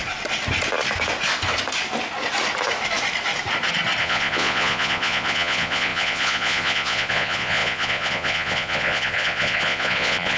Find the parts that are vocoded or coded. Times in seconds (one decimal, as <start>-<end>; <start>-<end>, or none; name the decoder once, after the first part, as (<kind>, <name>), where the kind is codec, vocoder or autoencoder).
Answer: 4.0-10.4 (vocoder, Vocos)